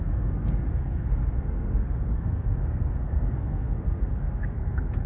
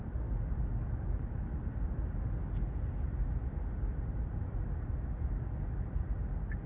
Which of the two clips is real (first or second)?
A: second